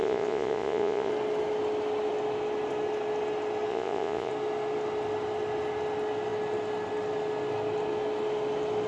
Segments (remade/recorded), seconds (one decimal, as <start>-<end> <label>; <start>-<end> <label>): 0.0-1.1 remade; 1.1-3.7 recorded; 3.7-4.3 remade; 4.3-8.9 recorded